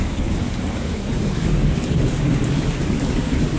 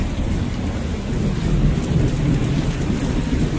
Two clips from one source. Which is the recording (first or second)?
second